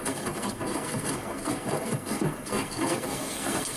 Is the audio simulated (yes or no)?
yes